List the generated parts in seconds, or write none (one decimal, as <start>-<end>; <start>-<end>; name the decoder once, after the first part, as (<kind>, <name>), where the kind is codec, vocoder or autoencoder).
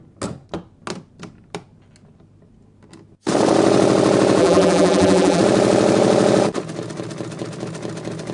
4.4-5.4 (vocoder, BigVGAN v2)